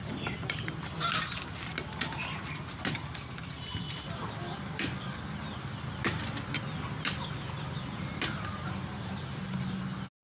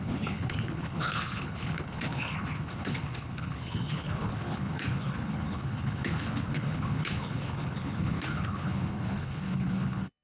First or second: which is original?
first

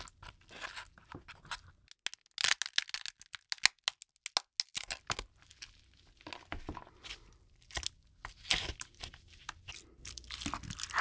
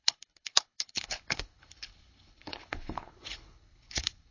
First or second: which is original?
first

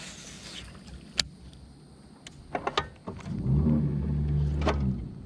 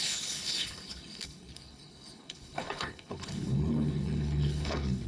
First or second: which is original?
first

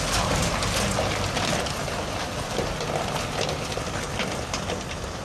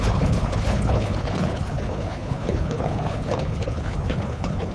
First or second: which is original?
first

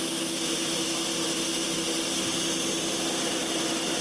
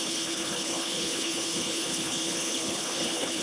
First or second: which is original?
first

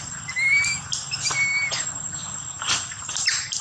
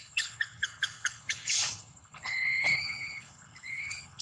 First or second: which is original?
first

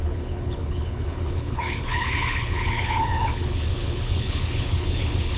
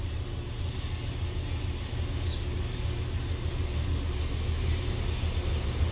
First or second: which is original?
second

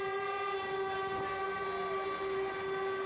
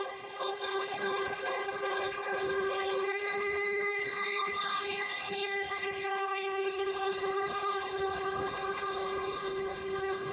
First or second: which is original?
first